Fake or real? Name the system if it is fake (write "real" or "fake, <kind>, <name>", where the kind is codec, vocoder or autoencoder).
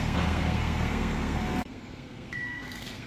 fake, codec, SNAC